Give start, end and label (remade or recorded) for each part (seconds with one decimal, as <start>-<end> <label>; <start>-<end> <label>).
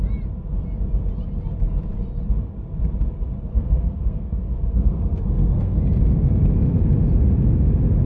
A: 0.0-3.5 recorded; 3.5-5.8 remade; 5.8-8.0 recorded